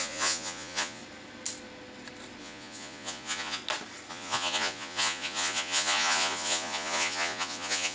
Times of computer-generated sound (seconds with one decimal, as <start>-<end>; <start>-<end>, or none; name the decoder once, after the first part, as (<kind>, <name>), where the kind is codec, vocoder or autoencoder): 0.0-1.0 (vocoder, Vocos); 2.4-3.6; 4.1-7.9